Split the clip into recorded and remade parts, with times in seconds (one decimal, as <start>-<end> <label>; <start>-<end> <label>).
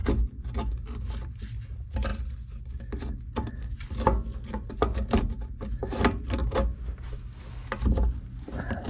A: 0.0-8.9 recorded